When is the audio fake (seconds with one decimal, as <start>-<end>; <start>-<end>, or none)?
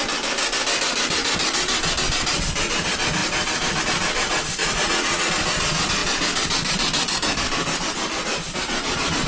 4.6-5.3